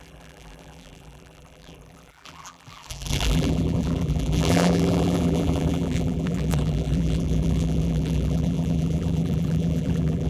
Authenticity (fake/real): fake